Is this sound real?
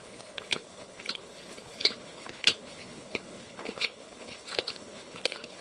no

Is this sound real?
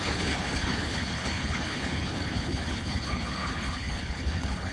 no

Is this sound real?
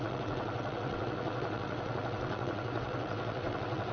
no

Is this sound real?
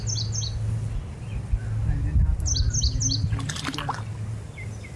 yes